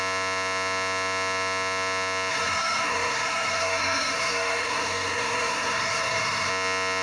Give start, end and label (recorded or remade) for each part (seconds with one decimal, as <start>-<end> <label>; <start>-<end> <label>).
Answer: 0.0-2.3 recorded; 2.3-6.5 remade; 6.5-7.0 recorded